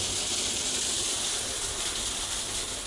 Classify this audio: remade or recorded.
recorded